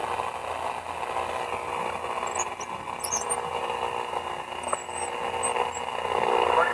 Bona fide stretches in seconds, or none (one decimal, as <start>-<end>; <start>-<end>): 0.0-6.7

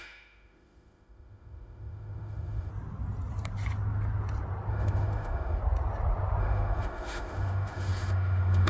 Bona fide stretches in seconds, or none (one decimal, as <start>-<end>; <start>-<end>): 2.7-4.7; 5.6-6.4

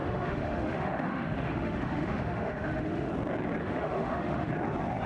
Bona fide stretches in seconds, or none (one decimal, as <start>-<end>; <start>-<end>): 3.1-3.6; 4.5-5.1

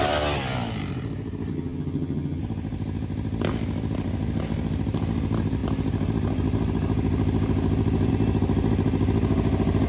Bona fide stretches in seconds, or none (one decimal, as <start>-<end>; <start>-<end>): 0.0-1.5; 2.4-9.9

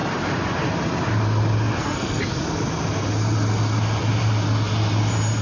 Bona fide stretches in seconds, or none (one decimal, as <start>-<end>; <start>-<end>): 0.0-1.8; 2.2-5.4

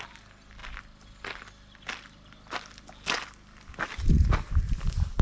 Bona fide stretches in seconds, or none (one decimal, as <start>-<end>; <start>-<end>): 0.0-5.2

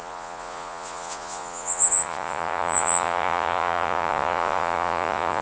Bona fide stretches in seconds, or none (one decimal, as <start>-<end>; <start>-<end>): none

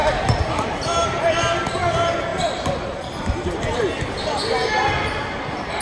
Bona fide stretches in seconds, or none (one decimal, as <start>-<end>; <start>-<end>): 0.0-5.8